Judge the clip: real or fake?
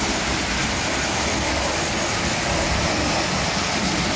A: real